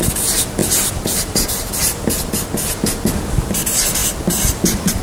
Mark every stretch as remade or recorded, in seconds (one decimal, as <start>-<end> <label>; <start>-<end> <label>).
0.0-0.6 recorded; 0.6-3.6 remade; 3.6-5.0 recorded